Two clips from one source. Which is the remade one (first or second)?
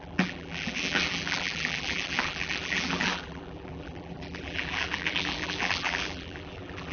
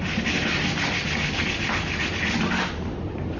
first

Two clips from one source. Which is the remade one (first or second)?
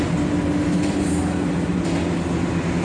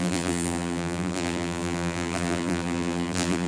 second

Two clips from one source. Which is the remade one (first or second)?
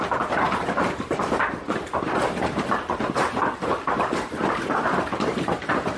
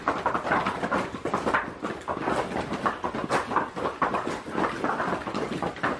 first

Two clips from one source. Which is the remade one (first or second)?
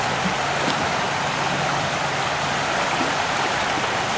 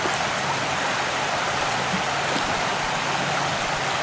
second